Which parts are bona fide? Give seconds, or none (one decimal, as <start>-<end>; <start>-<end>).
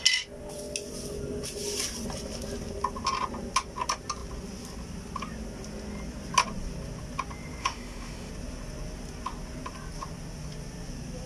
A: 0.0-7.6; 8.3-11.3